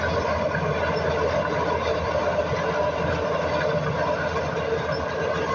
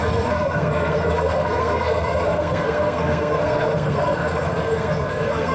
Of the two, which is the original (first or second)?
first